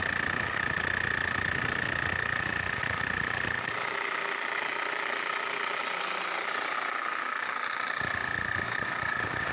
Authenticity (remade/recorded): recorded